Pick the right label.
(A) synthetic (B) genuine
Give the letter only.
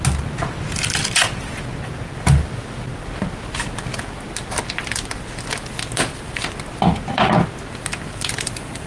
B